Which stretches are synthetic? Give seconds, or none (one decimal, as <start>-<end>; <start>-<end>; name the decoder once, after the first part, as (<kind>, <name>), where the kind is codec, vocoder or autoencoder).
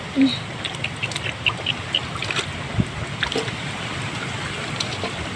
none